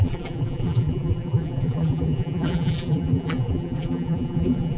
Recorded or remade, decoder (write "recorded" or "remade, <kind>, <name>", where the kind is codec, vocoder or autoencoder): remade, vocoder, BigVGAN v2